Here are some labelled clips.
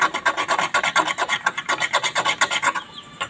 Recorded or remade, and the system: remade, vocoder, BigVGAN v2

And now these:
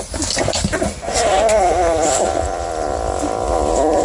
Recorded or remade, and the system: recorded